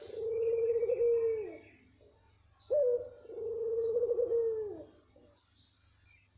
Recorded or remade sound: recorded